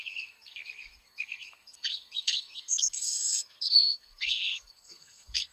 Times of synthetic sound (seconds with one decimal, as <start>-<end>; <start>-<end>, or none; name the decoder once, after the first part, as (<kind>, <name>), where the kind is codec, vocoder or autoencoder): 0.0-5.5 (codec, SNAC)